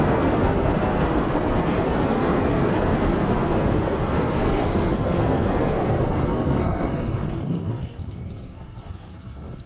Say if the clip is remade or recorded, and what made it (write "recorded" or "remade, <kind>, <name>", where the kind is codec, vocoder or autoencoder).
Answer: remade, codec, SNAC